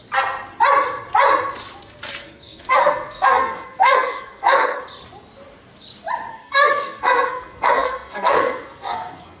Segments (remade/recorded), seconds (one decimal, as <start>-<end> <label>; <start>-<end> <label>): 0.0-2.2 recorded; 2.2-4.8 remade; 4.8-6.3 recorded; 6.3-9.4 remade